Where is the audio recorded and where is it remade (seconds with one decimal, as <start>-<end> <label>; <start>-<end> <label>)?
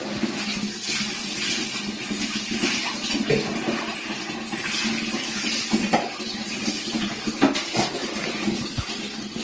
0.0-9.4 recorded